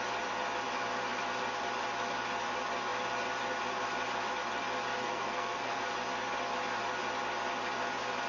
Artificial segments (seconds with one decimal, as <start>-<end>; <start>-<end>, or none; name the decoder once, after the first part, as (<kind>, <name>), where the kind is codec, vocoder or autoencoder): 5.0-5.8 (codec, SNAC)